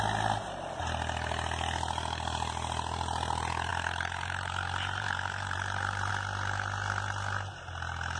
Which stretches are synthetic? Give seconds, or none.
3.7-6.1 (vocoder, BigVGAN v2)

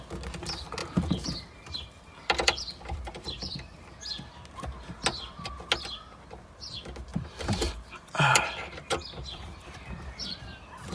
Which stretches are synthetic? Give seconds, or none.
0.8-4.0 (vocoder, BigVGAN v2); 7.1-10.9

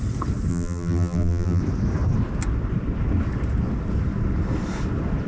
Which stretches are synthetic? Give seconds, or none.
0.5-1.6 (vocoder, BigVGAN v2)